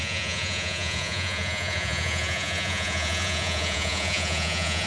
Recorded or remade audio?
remade